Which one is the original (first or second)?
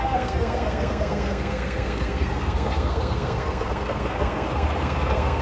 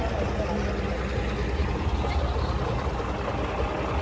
second